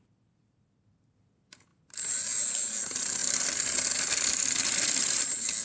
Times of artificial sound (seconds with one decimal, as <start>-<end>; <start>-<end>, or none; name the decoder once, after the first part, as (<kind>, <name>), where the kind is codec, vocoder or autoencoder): none